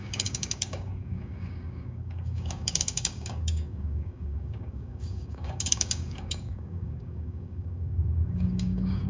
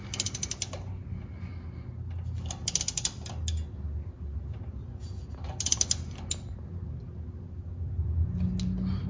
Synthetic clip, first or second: first